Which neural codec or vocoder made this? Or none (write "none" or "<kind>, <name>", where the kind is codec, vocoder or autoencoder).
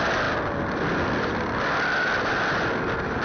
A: none